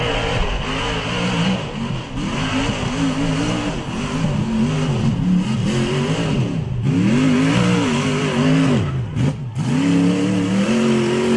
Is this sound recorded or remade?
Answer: recorded